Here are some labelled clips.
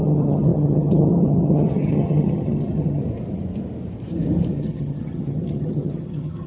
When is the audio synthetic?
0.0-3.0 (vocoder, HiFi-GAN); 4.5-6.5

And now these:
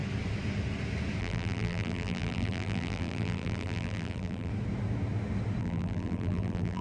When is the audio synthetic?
1.2-4.5 (vocoder, BigVGAN v2); 5.6-6.8

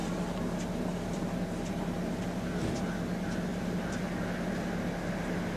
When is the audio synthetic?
none

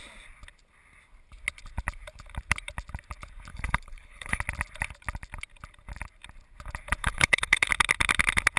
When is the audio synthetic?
3.5-4.4 (codec, HILCodec); 7.0-7.7

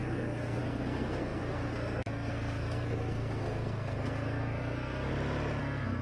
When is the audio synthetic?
0.0-5.1 (codec, SNAC); 5.6-6.0